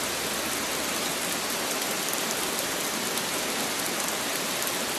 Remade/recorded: recorded